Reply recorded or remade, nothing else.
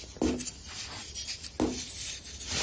recorded